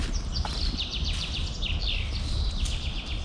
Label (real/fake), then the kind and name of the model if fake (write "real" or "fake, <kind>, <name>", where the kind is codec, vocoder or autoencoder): real